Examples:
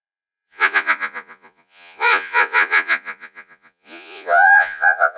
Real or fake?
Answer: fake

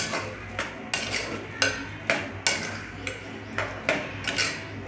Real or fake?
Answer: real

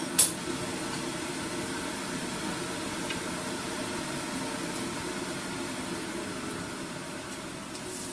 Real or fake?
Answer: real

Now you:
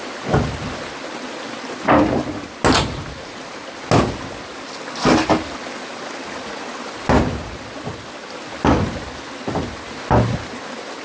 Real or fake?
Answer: real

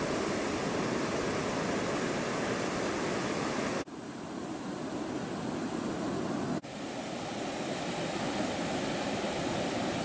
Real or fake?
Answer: real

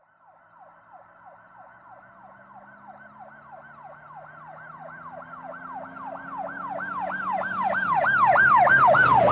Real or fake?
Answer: real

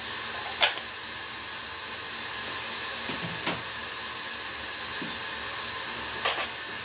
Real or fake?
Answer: real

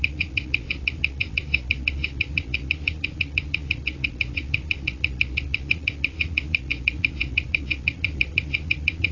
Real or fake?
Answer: fake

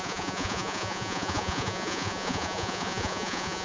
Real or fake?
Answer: fake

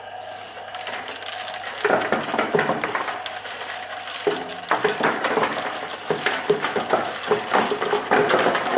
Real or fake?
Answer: real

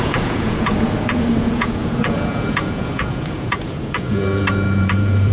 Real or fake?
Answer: fake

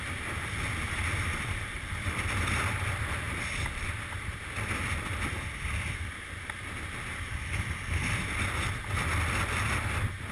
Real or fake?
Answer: real